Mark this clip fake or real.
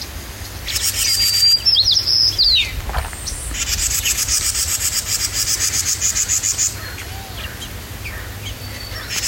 real